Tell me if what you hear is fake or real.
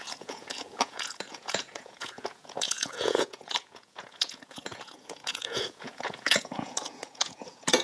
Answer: fake